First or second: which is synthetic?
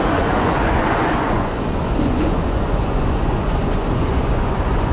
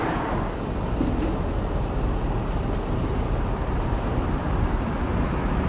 first